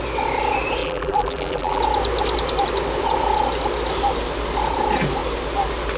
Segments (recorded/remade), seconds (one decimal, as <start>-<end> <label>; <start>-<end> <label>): 0.0-0.8 recorded; 0.8-1.8 remade; 1.8-6.0 recorded